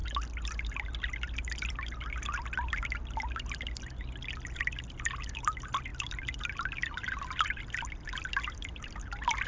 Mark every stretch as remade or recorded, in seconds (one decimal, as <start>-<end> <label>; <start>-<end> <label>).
0.0-9.5 recorded